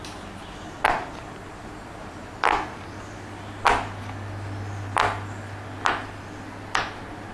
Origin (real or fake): real